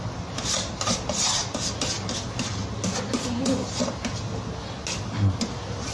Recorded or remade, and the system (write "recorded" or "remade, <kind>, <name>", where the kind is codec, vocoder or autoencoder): recorded